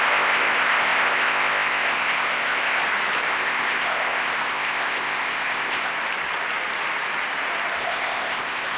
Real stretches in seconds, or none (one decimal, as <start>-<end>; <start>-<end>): 2.8-3.3; 5.9-7.8